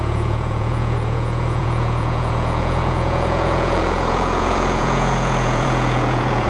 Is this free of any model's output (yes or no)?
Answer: no